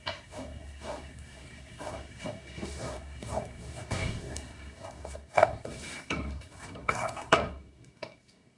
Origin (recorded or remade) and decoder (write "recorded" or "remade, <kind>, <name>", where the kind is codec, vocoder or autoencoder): remade, codec, SNAC